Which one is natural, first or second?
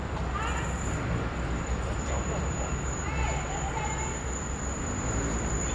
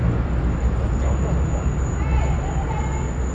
second